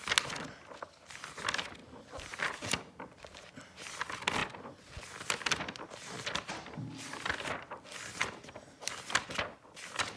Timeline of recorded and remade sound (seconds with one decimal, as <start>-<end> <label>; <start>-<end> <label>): 0.0-1.8 recorded; 1.8-2.3 remade; 2.3-4.4 recorded; 4.4-5.5 remade; 5.5-10.2 recorded